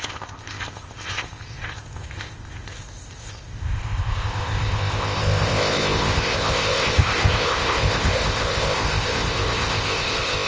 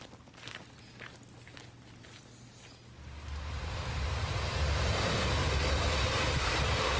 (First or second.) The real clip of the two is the second